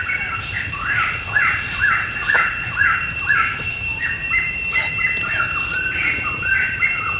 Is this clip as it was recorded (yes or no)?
no